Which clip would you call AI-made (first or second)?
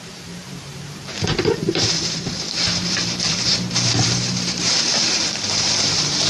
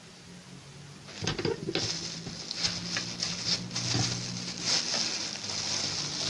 first